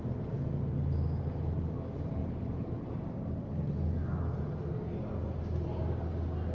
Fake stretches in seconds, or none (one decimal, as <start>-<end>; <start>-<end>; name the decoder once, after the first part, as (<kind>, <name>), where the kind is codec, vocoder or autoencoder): 2.2-3.5 (vocoder, BigVGAN v2)